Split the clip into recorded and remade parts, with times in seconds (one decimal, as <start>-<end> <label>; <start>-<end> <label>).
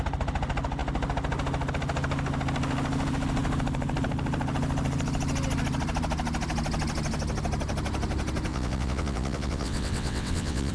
0.0-8.5 recorded; 8.5-10.7 remade